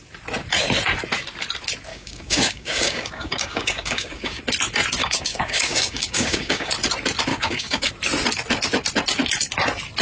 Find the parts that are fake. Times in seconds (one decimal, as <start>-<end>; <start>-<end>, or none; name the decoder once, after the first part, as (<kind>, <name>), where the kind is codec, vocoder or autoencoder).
1.9-4.4 (codec, DAC); 5.0-6.7; 7.3-7.9